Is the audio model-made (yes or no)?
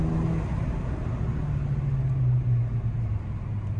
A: no